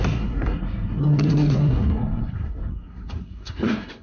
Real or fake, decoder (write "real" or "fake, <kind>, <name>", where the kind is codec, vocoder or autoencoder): fake, codec, SNAC